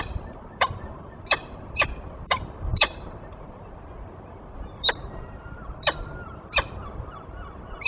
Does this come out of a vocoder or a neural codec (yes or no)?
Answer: yes